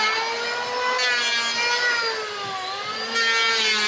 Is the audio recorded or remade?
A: recorded